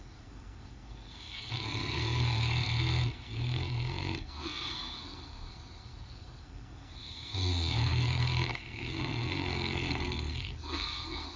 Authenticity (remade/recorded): remade